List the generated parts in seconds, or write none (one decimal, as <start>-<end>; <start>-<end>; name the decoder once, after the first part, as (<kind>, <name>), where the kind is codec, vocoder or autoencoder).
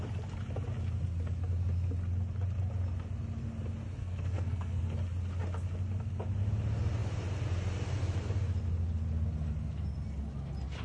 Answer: 4.0-4.8 (codec, SNAC)